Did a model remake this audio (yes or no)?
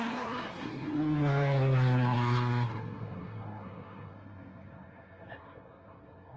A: yes